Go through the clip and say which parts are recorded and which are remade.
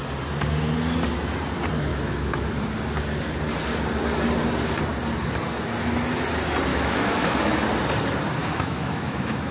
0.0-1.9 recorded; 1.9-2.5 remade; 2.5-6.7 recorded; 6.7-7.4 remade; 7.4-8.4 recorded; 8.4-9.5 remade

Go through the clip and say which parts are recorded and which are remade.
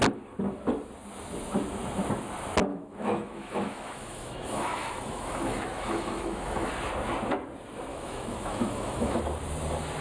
0.0-2.7 recorded; 2.7-6.7 remade; 6.7-7.9 recorded; 7.9-9.2 remade; 9.2-10.0 recorded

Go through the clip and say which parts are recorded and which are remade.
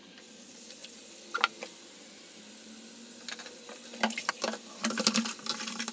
0.0-5.9 recorded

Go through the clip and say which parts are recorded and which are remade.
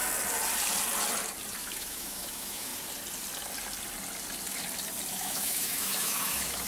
0.0-1.6 recorded; 1.6-2.7 remade; 2.7-5.1 recorded; 5.1-6.7 remade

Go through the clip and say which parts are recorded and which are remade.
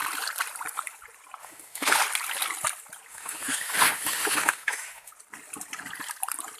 0.0-1.4 recorded; 1.4-2.0 remade; 2.0-3.1 recorded; 3.1-5.1 remade; 5.1-6.6 recorded